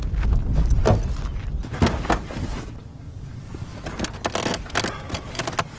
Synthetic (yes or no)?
no